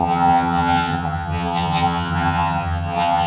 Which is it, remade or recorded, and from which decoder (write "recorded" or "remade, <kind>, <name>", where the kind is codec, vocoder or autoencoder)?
remade, vocoder, HiFi-GAN